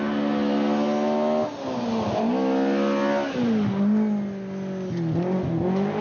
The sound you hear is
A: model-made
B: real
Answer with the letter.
B